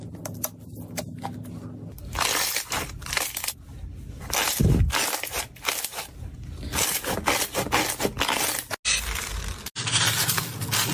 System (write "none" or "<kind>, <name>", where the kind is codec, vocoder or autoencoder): none